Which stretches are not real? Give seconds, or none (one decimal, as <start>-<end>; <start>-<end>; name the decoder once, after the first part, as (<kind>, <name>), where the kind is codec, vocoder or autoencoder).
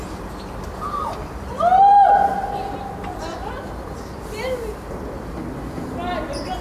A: none